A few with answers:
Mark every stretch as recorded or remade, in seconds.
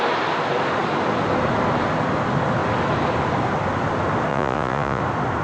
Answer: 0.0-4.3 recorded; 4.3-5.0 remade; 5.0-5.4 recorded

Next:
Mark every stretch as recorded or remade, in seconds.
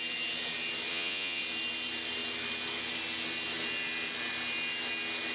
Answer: 0.0-0.9 recorded; 0.9-1.4 remade; 1.4-5.3 recorded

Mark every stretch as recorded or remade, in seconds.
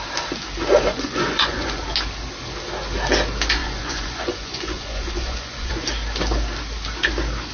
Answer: 0.0-0.9 recorded; 0.9-1.8 remade; 1.8-3.6 recorded; 3.6-5.7 remade; 5.7-7.5 recorded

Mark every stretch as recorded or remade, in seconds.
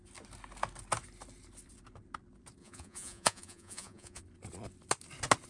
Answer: 0.0-2.6 recorded; 2.6-4.2 remade; 4.2-5.5 recorded